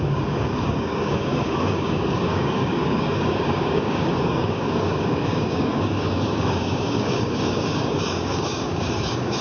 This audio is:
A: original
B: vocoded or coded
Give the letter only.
B